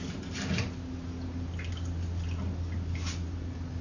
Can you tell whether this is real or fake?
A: real